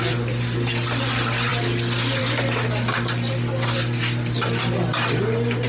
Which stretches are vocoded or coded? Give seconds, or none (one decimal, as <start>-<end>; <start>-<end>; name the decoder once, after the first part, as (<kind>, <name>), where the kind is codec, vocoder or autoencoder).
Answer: none

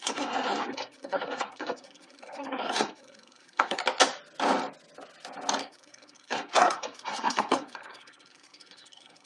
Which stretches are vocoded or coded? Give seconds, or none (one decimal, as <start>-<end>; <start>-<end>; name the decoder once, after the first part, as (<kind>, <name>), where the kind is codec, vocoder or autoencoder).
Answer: 0.0-3.8 (codec, SNAC); 5.6-9.3

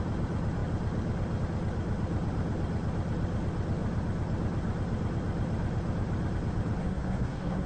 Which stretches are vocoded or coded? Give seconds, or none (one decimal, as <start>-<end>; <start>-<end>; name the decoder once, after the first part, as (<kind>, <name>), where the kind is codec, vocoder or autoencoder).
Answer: 6.8-7.7 (codec, SNAC)

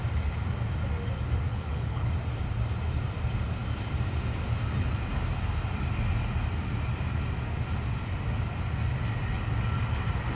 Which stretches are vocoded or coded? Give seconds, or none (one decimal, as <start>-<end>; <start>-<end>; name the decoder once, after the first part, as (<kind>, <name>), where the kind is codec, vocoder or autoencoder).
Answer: 1.5-2.1 (codec, HILCodec)

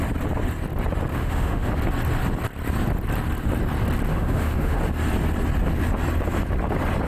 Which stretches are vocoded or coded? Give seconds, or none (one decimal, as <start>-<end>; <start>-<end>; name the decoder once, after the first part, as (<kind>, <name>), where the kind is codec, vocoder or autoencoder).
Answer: 1.1-1.7 (autoencoder, DAC-VAE); 4.1-4.8

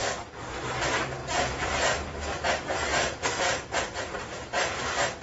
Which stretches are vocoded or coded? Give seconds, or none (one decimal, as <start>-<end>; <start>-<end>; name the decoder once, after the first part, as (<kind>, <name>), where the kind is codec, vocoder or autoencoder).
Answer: 1.2-1.7 (vocoder, Vocos)

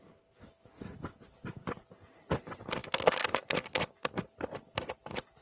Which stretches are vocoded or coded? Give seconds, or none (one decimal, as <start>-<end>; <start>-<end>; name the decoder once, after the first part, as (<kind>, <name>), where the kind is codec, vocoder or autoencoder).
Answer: none

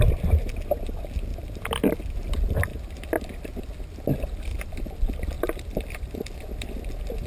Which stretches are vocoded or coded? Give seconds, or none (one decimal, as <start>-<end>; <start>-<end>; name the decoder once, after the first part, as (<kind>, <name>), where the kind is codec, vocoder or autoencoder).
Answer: 1.3-2.0 (vocoder, BigVGAN v2); 4.5-7.3